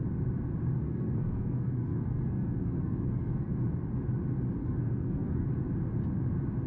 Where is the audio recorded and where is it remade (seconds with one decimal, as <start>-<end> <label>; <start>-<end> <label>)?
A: 0.0-0.8 recorded; 0.8-3.5 remade; 3.5-4.6 recorded; 4.6-5.5 remade; 5.5-6.7 recorded